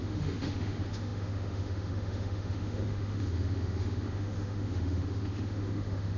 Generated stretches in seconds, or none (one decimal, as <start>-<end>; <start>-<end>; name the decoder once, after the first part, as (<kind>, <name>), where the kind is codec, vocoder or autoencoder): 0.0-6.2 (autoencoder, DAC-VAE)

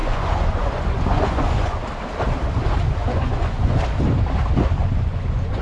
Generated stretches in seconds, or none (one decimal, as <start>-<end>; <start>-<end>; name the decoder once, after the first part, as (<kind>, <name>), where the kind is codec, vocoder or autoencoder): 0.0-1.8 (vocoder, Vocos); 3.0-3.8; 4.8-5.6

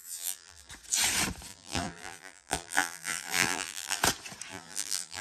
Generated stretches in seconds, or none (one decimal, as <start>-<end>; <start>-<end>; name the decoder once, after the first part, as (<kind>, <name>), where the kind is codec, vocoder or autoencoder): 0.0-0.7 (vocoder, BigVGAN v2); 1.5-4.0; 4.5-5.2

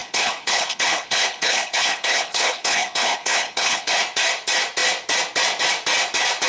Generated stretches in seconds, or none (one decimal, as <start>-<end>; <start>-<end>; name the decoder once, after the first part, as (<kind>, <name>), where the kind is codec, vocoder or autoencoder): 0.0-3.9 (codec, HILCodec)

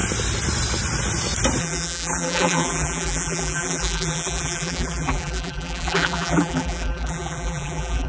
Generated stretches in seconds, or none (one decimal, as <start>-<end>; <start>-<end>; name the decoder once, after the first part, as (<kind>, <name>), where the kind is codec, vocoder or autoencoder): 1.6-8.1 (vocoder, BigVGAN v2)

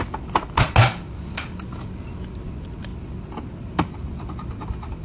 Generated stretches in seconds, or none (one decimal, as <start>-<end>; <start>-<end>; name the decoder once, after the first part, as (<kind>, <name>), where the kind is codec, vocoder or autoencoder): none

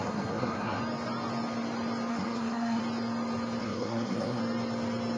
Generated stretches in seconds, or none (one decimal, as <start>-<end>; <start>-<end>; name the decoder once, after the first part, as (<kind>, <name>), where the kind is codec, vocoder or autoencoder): 0.0-0.8 (codec, SNAC); 2.1-2.8; 3.6-4.4

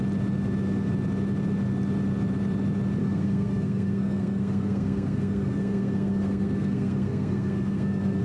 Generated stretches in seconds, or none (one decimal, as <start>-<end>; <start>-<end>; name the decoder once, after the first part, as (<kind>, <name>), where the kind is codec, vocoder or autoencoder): 3.0-8.2 (codec, SNAC)